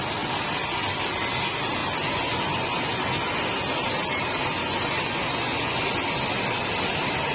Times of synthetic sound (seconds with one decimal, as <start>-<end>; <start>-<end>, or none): 1.8-3.3; 4.6-5.8